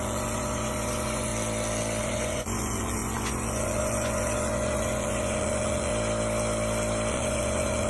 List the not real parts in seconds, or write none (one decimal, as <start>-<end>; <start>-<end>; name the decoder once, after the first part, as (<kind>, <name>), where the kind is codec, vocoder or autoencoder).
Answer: 0.0-1.3 (vocoder, Vocos); 2.0-5.9; 7.1-7.9